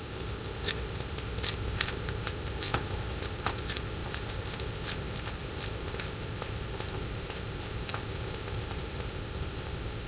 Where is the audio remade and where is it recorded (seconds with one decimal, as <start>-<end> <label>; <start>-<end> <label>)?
0.0-10.1 remade